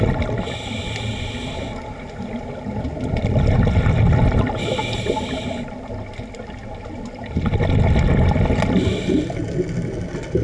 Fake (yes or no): no